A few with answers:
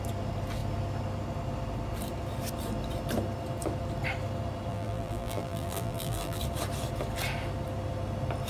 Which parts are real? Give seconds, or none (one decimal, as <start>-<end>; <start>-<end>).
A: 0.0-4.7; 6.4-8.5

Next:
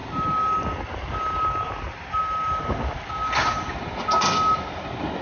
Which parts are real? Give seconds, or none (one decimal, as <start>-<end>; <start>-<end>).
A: 0.0-5.2

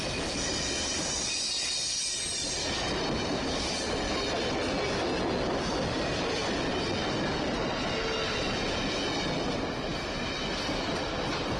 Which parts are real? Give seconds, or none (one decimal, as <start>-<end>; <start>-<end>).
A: 0.0-11.6

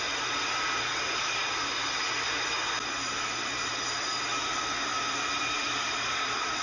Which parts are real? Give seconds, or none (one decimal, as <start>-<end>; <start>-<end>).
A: 0.0-6.6

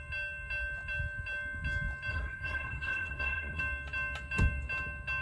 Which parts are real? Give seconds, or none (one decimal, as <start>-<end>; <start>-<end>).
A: 0.0-2.1; 3.6-5.2

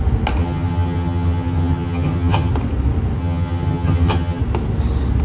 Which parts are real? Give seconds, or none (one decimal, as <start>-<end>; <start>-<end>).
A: 0.0-0.4; 2.5-3.2; 4.4-5.2